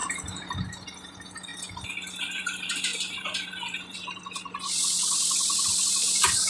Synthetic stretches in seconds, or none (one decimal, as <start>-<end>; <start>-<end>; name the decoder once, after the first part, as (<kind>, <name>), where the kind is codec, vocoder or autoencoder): none